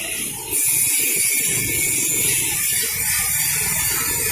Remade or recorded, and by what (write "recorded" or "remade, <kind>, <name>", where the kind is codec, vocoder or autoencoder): recorded